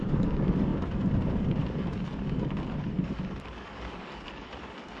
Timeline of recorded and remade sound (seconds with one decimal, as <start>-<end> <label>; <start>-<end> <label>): 0.0-5.0 remade